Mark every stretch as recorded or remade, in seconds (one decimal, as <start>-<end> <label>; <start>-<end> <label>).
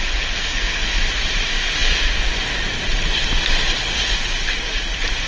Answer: 0.0-0.4 recorded; 0.4-0.9 remade; 0.9-5.3 recorded